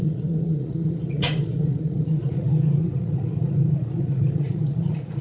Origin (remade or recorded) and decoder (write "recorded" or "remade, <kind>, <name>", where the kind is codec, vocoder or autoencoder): remade, vocoder, Vocos